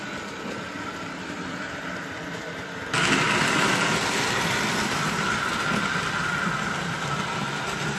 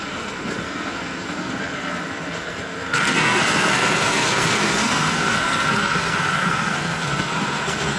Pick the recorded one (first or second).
first